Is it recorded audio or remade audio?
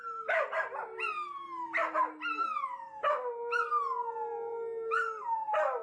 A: recorded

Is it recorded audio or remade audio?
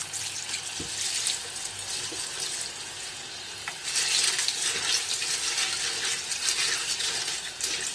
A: recorded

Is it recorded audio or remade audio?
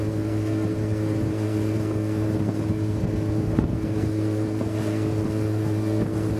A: remade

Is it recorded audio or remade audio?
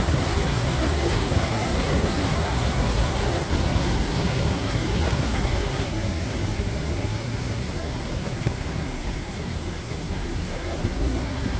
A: remade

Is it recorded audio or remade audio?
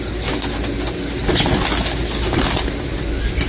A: recorded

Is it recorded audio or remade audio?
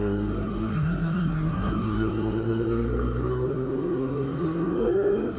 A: remade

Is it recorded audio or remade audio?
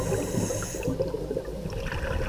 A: recorded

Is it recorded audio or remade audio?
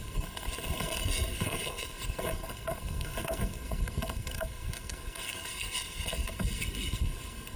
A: remade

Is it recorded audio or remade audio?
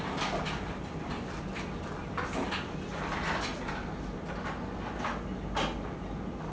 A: recorded